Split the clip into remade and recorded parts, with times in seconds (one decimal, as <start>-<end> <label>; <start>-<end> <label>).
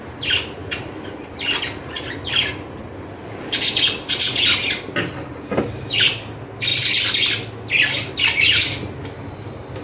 0.0-9.8 recorded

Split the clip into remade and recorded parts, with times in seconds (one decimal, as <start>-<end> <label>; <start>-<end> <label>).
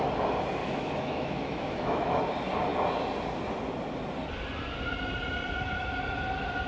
0.0-0.6 recorded; 0.6-2.2 remade; 2.2-6.7 recorded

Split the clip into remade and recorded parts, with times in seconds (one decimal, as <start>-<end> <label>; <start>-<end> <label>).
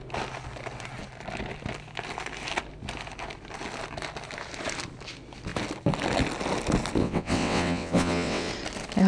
0.0-7.0 recorded; 7.0-8.5 remade; 8.5-9.1 recorded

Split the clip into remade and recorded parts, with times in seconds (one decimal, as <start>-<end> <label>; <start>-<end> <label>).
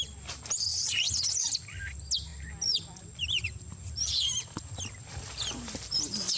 0.0-6.4 recorded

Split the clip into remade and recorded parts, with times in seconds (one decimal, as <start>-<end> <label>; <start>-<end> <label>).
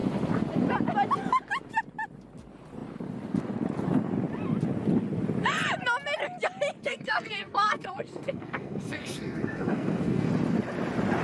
0.0-6.8 recorded; 6.8-10.3 remade; 10.3-11.2 recorded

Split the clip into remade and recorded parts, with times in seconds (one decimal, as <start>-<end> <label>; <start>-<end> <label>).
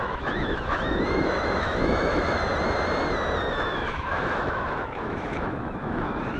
0.0-2.5 remade; 2.5-3.5 recorded; 3.5-6.4 remade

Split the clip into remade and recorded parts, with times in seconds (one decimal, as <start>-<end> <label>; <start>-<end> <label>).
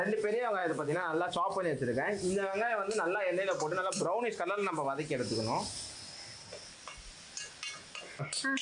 0.0-0.6 recorded; 0.6-1.3 remade; 1.3-8.6 recorded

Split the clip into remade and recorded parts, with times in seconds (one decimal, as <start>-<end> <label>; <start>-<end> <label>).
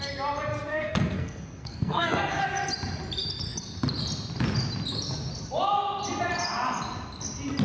0.0-0.7 recorded; 0.7-2.4 remade; 2.4-7.6 recorded